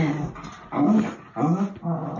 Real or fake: real